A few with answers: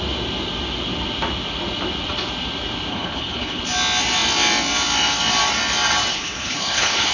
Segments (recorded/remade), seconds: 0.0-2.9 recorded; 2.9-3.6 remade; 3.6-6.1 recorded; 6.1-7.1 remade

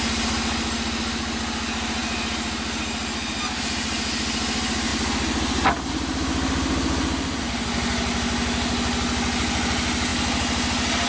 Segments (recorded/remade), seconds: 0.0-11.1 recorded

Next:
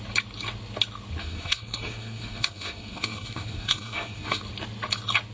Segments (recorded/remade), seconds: 0.0-1.2 recorded; 1.2-4.4 remade; 4.4-5.3 recorded

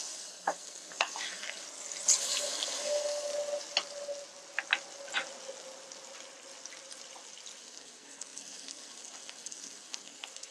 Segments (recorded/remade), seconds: 0.0-1.6 remade; 1.6-2.2 recorded; 2.2-3.3 remade; 3.3-7.6 recorded; 7.6-10.5 remade

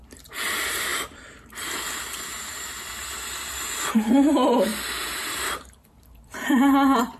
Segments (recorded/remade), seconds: 0.0-7.2 remade

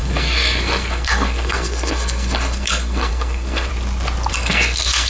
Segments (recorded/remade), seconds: 0.0-3.7 remade; 3.7-4.3 recorded; 4.3-5.1 remade

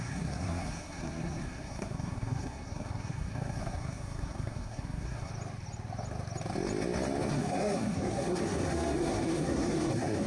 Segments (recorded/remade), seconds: 0.0-5.3 remade; 5.3-7.3 recorded; 7.3-10.3 remade